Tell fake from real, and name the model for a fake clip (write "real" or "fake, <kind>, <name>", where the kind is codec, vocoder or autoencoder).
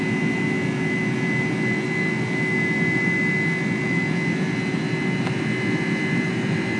real